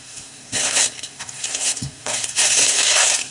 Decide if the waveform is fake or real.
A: fake